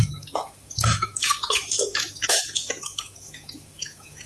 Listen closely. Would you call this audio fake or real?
fake